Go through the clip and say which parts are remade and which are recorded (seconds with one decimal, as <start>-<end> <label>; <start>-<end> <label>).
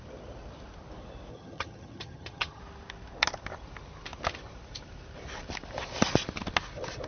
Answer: 0.0-1.3 recorded; 1.3-2.6 remade; 2.6-7.1 recorded